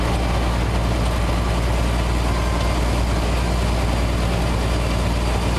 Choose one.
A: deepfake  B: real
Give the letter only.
B